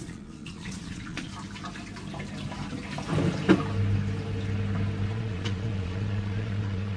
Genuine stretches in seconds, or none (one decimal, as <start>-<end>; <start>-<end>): 1.3-5.1